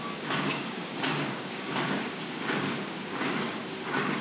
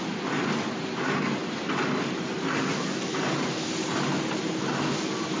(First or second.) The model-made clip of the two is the first